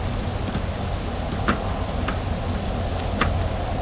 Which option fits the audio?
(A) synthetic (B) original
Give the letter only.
B